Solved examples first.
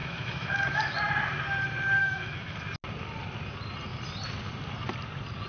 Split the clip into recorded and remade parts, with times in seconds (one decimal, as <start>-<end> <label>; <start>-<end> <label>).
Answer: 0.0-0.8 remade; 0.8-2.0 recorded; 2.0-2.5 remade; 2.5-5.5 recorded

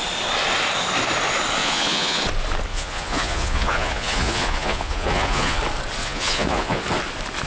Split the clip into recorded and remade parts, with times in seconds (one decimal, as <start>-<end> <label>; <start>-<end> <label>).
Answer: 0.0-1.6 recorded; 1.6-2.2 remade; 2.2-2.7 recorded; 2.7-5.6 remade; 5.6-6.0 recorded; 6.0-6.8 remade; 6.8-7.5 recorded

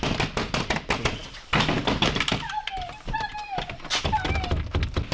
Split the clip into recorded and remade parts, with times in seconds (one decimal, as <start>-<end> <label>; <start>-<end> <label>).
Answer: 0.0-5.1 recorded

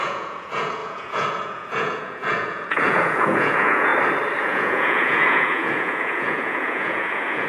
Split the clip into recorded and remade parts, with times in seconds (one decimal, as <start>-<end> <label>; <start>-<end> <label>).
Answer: 0.0-3.9 remade; 3.9-4.4 recorded; 4.4-7.5 remade

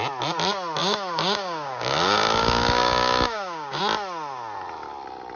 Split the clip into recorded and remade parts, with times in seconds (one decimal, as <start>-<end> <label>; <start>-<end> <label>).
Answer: 0.0-0.8 recorded; 0.8-3.8 remade; 3.8-5.4 recorded

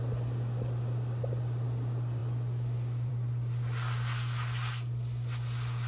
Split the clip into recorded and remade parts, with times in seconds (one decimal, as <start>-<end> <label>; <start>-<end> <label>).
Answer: 0.0-5.9 recorded